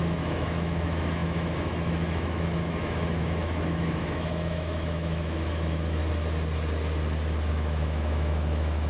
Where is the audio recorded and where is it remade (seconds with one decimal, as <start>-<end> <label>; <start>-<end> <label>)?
0.0-6.0 remade; 6.0-7.5 recorded; 7.5-8.9 remade